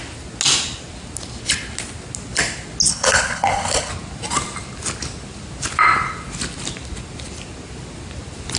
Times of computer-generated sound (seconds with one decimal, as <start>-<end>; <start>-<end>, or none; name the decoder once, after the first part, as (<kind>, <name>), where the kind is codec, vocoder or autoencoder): 2.9-3.9 (codec, HILCodec)